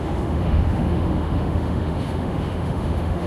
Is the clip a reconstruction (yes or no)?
yes